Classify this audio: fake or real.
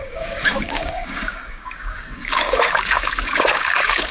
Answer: fake